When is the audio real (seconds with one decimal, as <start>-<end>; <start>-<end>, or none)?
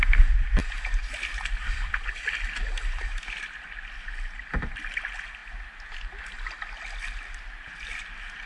0.0-8.5